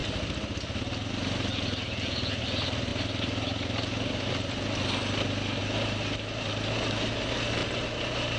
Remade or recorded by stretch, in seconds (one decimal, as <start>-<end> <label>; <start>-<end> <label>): 0.0-8.4 recorded